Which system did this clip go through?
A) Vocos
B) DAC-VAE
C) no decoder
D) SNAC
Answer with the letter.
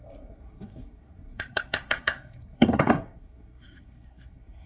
D